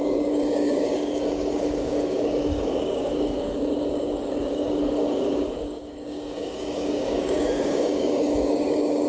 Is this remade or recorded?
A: remade